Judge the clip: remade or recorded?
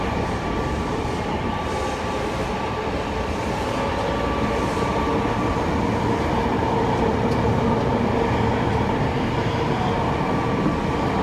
recorded